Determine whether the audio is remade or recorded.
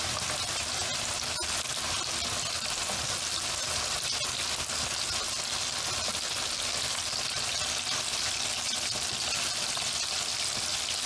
recorded